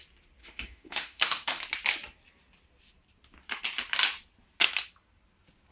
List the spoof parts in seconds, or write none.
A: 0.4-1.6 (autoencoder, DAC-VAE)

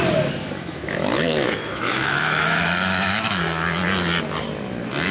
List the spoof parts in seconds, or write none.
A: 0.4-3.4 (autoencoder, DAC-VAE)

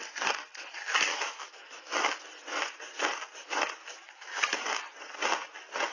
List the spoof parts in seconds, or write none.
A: 1.1-2.2 (autoencoder, DAC-VAE); 3.8-4.3